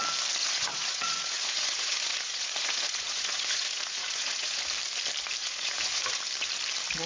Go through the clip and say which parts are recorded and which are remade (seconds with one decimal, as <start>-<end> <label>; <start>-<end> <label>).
0.0-0.4 recorded; 0.4-4.7 remade; 4.7-5.4 recorded; 5.4-6.2 remade; 6.2-7.1 recorded